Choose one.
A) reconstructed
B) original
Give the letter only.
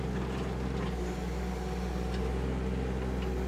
B